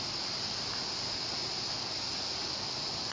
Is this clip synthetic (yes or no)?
no